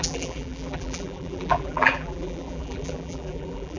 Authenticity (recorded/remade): remade